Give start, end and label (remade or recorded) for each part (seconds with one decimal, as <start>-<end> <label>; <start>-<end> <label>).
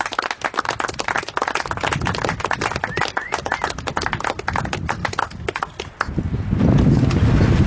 0.0-5.0 recorded; 5.0-5.7 remade; 5.7-7.7 recorded